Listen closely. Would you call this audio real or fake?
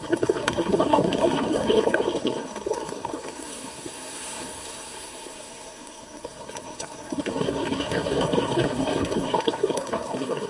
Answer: fake